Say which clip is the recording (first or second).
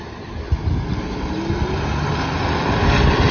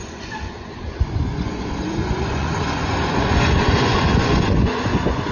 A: first